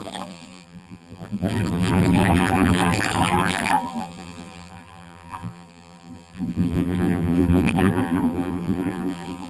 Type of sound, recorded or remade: remade